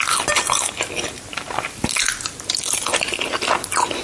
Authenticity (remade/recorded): recorded